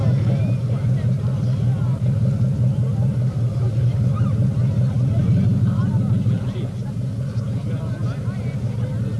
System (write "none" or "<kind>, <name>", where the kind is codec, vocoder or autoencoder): none